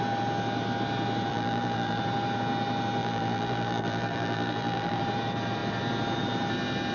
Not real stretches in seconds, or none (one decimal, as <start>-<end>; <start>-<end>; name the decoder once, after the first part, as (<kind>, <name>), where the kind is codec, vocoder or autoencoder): 1.3-2.0 (vocoder, BigVGAN v2); 3.0-5.0